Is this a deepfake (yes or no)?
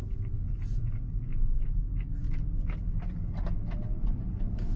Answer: no